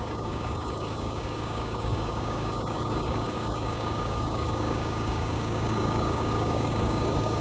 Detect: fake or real fake